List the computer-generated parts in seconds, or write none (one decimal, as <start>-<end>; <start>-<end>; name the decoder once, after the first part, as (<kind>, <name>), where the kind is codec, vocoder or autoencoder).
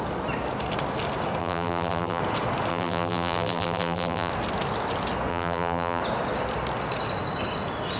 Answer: 1.4-2.2 (vocoder, BigVGAN v2); 2.7-4.3; 5.3-6.0